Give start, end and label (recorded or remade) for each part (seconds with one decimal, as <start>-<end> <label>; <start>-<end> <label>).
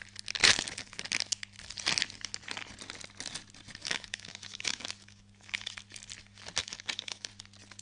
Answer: 0.0-0.4 recorded; 0.4-1.0 remade; 1.0-3.8 recorded; 3.8-5.7 remade; 5.7-6.6 recorded; 6.6-7.3 remade; 7.3-7.8 recorded